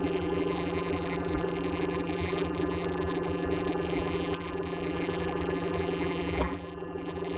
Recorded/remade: remade